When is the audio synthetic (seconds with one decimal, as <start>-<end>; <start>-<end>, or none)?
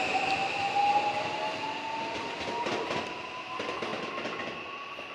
none